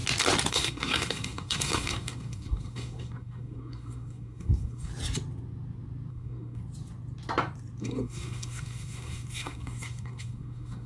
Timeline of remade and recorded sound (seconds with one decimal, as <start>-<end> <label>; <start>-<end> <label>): 0.0-0.5 recorded; 0.5-4.9 remade; 4.9-6.1 recorded; 6.1-6.6 remade; 6.6-7.8 recorded; 7.8-10.9 remade